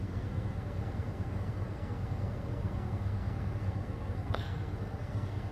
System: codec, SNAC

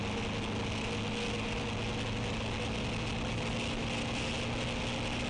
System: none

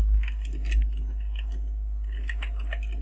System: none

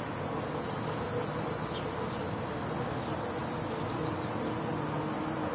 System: none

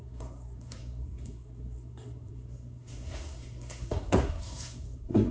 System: codec, SNAC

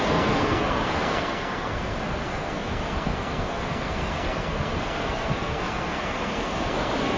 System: codec, SNAC